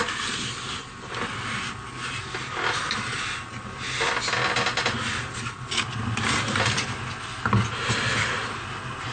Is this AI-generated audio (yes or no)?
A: no